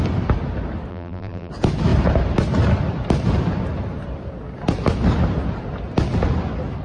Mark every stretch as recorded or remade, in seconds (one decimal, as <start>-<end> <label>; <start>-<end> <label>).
0.0-0.9 recorded; 0.9-1.5 remade; 1.5-6.8 recorded